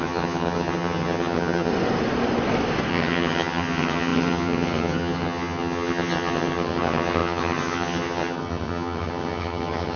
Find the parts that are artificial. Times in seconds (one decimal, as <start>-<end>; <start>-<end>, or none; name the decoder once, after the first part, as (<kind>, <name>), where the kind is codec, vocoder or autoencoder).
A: 0.0-1.7 (vocoder, HiFi-GAN); 2.9-10.0